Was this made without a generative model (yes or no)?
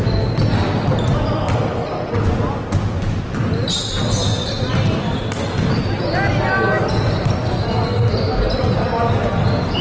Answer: yes